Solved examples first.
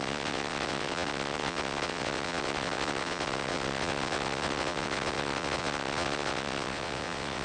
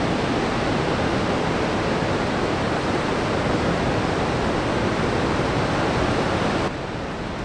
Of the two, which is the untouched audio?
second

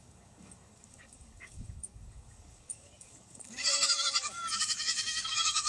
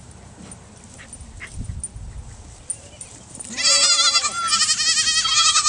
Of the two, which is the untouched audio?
second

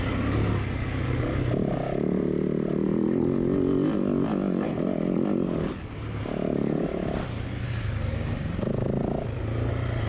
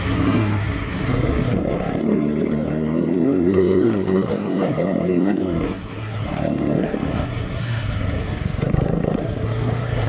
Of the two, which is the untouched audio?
first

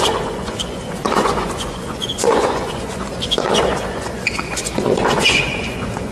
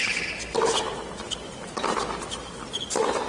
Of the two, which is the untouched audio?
second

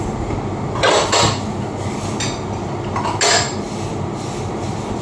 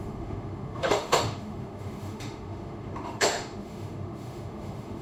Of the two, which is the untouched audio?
first